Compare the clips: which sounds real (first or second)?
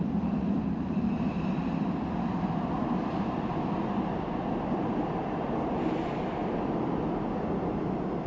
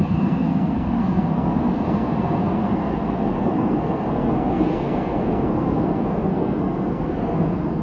first